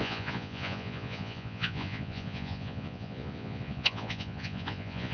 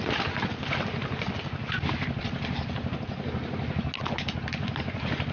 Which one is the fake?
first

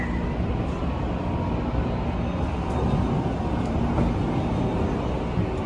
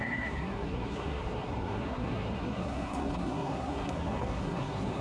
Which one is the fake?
second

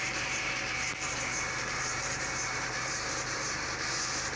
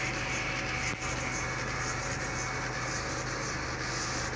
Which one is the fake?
first